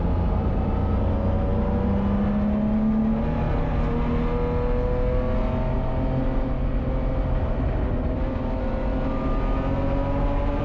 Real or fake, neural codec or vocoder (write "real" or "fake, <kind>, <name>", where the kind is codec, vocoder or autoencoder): real